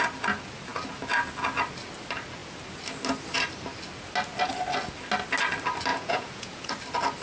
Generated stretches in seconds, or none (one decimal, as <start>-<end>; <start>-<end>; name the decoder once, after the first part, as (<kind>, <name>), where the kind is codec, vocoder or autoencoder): 5.9-6.7 (vocoder, Vocos)